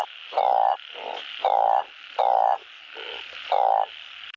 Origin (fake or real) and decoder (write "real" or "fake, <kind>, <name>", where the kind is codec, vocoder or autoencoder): real